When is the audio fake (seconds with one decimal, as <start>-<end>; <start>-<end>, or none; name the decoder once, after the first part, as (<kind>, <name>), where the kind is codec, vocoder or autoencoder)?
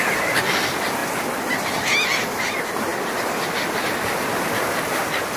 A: none